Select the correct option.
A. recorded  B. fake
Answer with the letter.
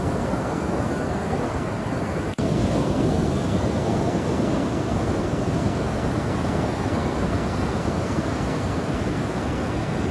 B